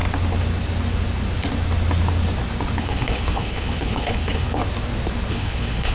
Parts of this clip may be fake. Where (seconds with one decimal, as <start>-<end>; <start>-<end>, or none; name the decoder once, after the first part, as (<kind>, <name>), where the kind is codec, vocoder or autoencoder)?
2.8-4.6 (codec, HILCodec); 5.3-5.9